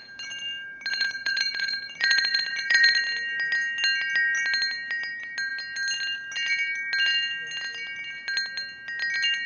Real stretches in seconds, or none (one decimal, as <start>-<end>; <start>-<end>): 0.0-0.9; 3.0-9.5